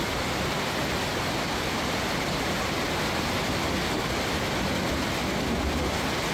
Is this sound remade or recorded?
recorded